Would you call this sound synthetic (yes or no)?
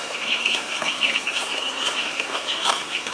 yes